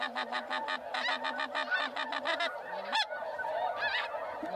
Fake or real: real